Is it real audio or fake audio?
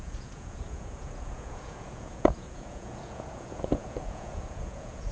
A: fake